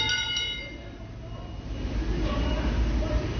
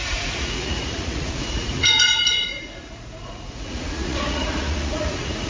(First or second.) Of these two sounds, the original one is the first